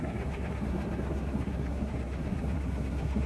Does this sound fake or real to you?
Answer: fake